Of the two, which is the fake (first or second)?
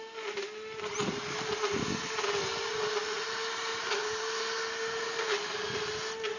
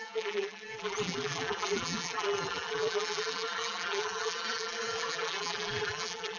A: second